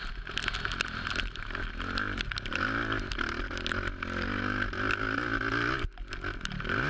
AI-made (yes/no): no